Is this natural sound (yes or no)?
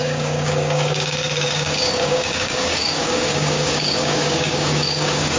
no